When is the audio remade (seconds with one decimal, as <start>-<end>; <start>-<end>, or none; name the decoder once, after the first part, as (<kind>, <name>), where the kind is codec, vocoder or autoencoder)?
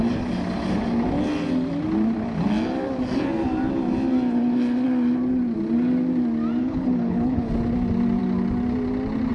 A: 6.6-7.5 (codec, HILCodec)